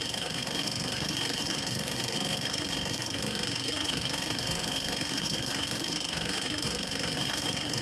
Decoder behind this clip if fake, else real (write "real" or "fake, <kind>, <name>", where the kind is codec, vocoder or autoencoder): fake, codec, SNAC